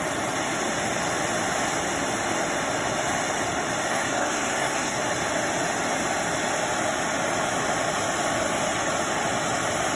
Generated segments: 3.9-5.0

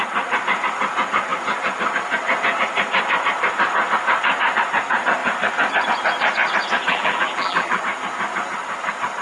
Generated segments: 6.9-7.8

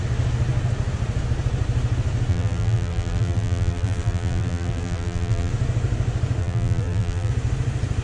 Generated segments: 2.3-5.5; 6.4-7.3

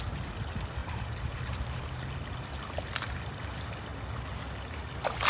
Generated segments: 0.8-2.0

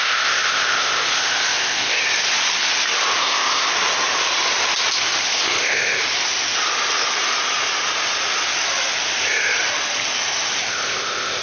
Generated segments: 0.0-2.0; 3.2-3.7; 5.2-6.0; 10.6-11.4

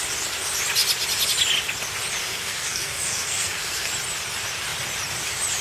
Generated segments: 2.2-3.9